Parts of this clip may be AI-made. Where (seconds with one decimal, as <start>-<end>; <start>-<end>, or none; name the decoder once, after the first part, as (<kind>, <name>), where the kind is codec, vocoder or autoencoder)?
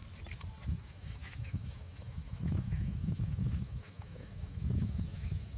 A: 0.7-5.6 (autoencoder, DAC-VAE)